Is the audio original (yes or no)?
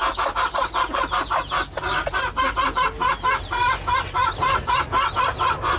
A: yes